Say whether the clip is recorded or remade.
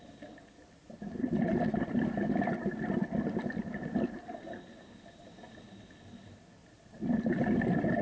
recorded